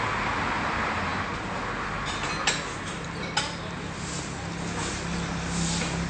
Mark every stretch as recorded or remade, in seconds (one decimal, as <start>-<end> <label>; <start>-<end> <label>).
0.0-6.1 recorded